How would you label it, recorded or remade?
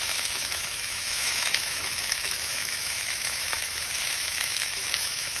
remade